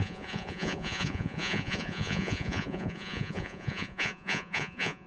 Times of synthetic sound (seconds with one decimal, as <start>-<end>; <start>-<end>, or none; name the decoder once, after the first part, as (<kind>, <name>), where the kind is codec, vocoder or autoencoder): 0.0-5.1 (vocoder, Vocos)